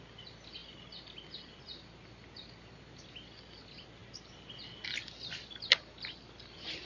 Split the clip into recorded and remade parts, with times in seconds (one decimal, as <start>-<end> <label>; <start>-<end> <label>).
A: 0.0-6.9 recorded